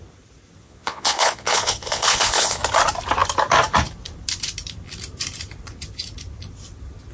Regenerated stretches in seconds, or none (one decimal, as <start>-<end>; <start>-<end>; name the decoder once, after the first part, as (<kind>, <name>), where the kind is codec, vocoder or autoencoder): 0.6-2.6 (vocoder, Vocos)